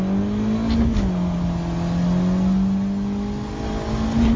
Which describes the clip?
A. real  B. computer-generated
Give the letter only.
A